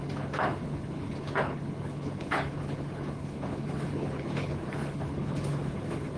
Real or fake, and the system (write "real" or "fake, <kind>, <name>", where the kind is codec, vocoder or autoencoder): fake, codec, HILCodec